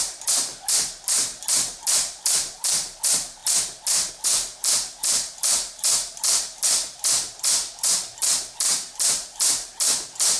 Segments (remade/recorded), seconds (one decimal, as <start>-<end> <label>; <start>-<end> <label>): 0.0-0.5 remade; 0.5-1.5 recorded; 1.5-3.4 remade; 3.4-4.1 recorded; 4.1-6.8 remade; 6.8-8.4 recorded; 8.4-10.4 remade